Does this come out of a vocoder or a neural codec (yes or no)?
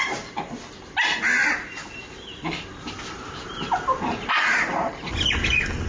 no